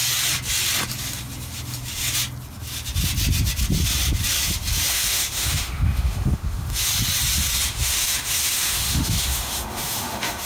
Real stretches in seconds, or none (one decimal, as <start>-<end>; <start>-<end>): 0.0-4.9; 6.9-7.7

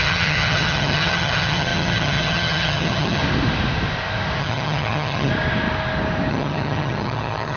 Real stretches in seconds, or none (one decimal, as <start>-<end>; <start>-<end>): 3.2-4.4; 5.3-6.3

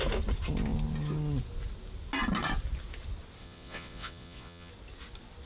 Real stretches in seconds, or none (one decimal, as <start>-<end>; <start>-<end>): 0.0-3.4; 4.7-5.5

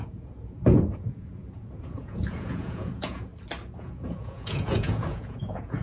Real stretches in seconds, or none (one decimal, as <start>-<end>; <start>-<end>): 3.3-3.8

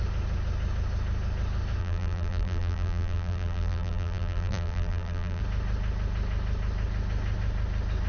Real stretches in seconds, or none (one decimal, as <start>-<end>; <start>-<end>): 0.0-1.8; 5.4-8.1

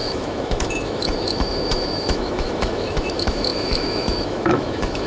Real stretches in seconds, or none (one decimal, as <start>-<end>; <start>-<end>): none